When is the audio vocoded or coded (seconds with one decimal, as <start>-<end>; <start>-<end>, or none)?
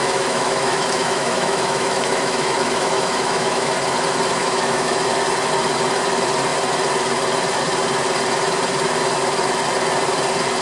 0.0-3.7; 4.4-5.0